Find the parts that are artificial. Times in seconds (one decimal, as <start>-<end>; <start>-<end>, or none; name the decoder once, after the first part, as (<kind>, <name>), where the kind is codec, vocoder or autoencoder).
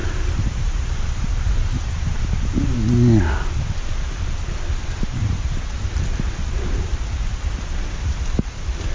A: 0.0-2.2 (vocoder, BigVGAN v2); 5.2-5.9